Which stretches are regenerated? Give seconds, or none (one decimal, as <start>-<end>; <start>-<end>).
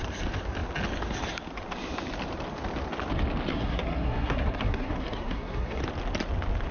3.5-5.8